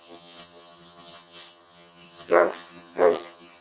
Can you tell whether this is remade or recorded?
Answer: remade